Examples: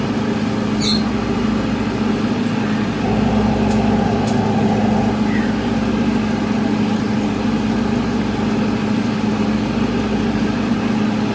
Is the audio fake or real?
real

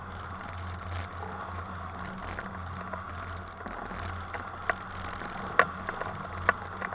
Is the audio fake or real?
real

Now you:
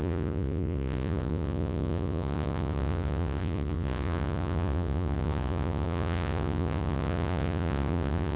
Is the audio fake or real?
fake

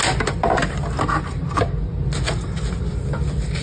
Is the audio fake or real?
real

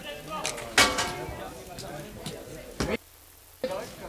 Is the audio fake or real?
real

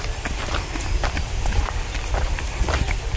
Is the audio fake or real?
fake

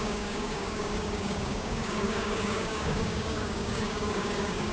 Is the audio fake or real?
fake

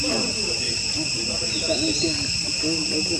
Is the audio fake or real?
real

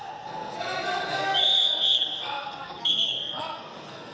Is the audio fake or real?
fake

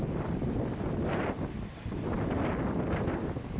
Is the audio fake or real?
real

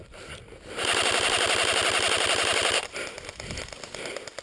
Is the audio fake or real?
real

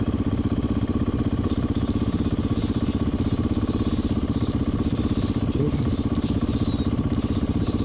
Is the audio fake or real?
real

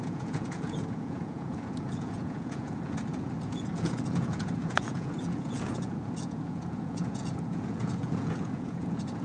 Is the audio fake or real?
fake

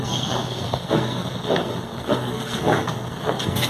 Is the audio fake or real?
fake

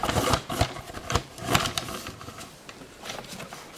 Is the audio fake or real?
fake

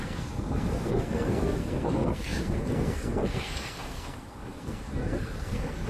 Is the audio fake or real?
fake